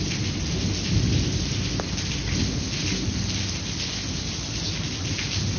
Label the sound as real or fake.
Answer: real